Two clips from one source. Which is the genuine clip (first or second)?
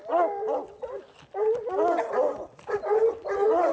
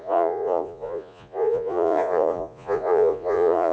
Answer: first